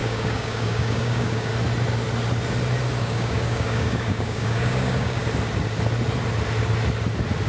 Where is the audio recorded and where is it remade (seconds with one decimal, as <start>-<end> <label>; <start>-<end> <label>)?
0.0-1.5 remade; 1.5-3.0 recorded; 3.0-5.2 remade; 5.2-7.5 recorded